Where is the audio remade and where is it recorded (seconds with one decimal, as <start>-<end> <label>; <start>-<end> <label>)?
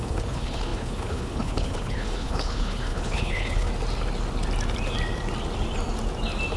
0.0-3.7 remade; 3.7-6.6 recorded